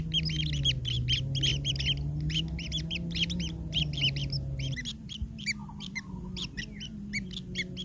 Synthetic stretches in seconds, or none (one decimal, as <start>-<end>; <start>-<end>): 1.5-3.1; 5.6-6.6